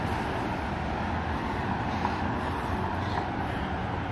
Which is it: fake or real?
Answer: real